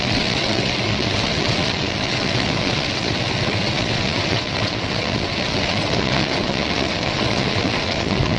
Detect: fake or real fake